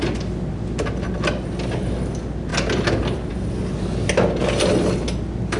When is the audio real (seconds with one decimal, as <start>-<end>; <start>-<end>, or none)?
0.0-5.6